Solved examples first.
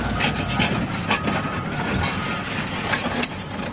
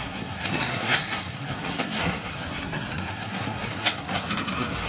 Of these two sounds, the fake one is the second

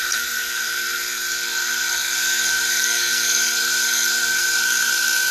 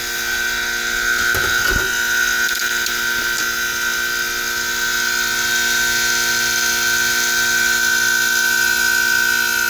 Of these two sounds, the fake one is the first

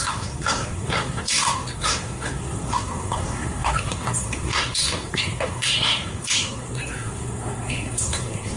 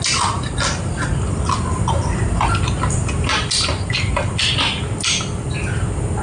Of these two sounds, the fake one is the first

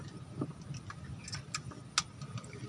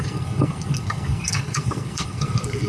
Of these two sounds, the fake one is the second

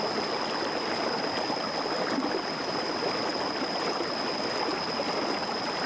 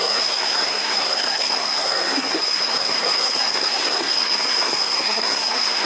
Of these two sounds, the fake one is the second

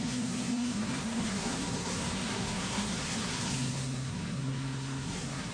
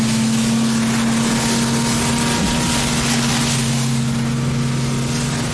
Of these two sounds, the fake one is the first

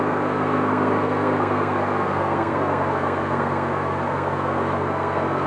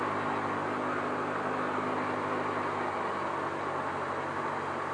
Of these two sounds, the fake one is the first